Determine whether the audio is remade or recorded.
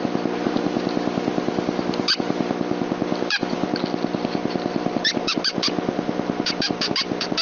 recorded